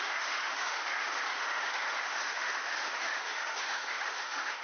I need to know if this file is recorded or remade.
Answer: remade